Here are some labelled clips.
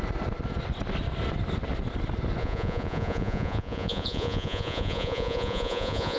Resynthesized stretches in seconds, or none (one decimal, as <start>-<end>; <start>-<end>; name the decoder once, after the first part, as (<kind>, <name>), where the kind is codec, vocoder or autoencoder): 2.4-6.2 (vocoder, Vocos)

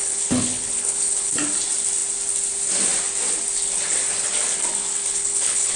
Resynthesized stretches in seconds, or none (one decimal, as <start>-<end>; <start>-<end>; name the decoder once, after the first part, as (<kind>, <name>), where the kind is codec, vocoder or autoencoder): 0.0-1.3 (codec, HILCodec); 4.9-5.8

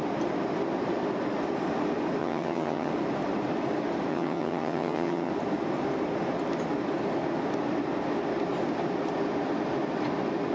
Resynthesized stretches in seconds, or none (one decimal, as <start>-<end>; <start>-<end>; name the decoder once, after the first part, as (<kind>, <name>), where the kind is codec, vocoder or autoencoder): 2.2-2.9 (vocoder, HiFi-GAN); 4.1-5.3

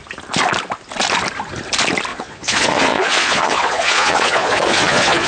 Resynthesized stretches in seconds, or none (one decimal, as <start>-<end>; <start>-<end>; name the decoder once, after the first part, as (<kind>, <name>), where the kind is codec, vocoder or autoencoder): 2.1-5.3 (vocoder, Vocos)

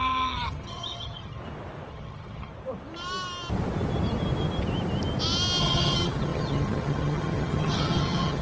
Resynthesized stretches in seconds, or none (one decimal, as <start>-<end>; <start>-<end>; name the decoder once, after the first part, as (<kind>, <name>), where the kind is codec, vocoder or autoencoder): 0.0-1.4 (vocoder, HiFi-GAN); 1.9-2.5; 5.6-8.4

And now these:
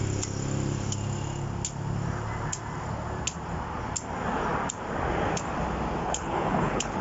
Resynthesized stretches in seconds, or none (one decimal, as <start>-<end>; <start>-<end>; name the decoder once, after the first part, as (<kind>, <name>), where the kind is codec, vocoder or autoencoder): 6.0-7.0 (codec, HILCodec)

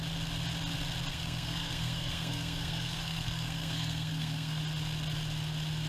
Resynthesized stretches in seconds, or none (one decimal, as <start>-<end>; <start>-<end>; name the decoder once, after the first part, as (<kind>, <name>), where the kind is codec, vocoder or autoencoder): 1.1-4.6 (codec, SNAC)

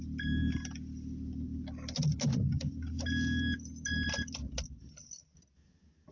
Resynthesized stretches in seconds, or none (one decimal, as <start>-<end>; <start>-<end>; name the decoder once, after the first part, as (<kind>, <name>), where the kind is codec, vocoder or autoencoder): none